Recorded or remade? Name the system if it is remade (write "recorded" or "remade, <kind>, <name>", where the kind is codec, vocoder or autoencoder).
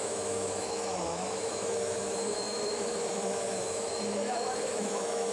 remade, autoencoder, DAC-VAE